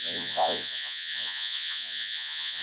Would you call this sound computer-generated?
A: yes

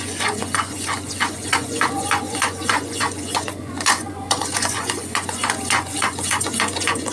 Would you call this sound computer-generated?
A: yes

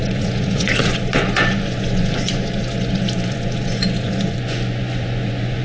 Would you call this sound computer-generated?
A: yes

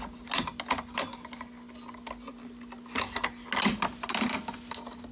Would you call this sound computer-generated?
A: no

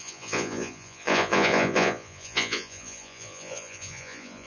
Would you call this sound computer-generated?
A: yes